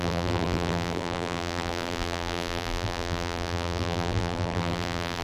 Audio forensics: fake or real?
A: fake